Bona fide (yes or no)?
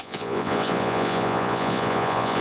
no